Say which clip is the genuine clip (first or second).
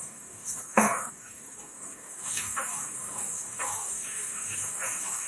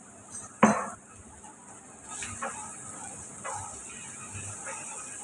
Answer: second